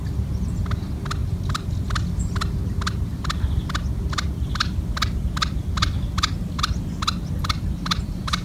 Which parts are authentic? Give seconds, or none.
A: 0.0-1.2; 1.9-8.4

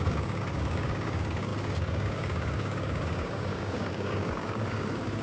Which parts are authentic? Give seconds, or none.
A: none

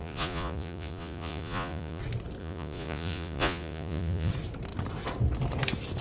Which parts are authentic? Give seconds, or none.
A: 2.0-2.4; 4.3-6.0

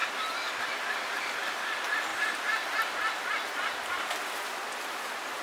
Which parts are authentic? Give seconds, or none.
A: 0.6-5.4

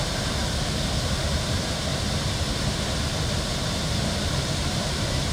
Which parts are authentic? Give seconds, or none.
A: 0.4-1.1; 1.9-3.6

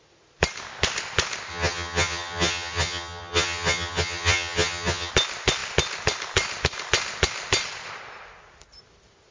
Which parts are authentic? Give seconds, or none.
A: 0.0-1.5; 5.1-9.3